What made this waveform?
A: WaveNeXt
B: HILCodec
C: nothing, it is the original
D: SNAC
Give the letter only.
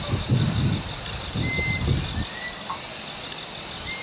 C